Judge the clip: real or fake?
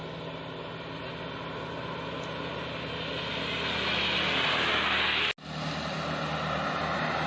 real